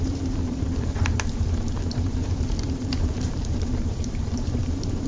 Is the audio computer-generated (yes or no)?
yes